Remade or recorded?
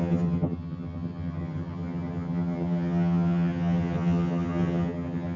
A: remade